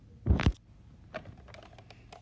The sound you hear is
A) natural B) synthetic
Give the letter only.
A